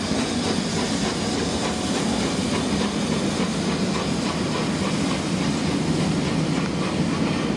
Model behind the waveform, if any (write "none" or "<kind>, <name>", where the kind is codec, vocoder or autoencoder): none